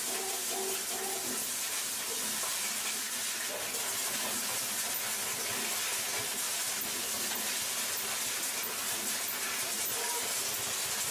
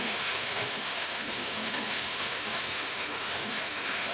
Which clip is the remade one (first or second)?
second